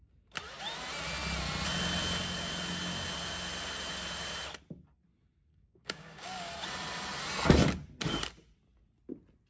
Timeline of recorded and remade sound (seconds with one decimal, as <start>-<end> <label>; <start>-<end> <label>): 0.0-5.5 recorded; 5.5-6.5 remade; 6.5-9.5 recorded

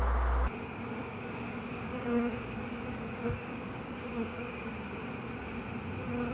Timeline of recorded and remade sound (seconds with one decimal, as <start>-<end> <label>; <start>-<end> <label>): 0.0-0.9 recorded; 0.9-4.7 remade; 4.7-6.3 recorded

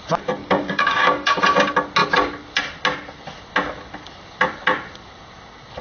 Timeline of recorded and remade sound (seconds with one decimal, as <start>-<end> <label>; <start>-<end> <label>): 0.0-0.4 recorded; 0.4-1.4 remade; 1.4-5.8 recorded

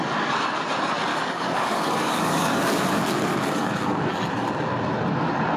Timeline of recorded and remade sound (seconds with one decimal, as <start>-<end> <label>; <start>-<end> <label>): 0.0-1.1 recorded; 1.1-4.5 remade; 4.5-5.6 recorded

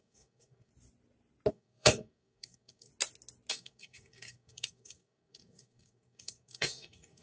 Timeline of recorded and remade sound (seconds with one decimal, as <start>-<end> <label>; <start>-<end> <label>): 0.0-0.7 remade; 0.7-1.5 recorded; 1.5-2.9 remade; 2.9-3.5 recorded; 3.5-7.2 remade

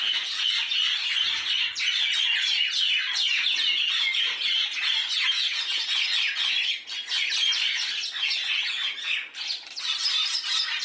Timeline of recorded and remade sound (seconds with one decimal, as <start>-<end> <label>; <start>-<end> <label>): 0.0-10.8 recorded

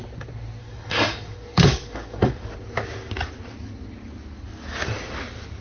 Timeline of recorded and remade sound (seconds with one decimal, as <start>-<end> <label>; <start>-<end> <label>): 0.0-0.6 recorded; 0.6-2.5 remade; 2.5-5.6 recorded